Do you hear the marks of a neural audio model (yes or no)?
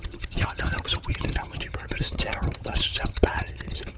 yes